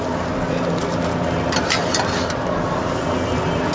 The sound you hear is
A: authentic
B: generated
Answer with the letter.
A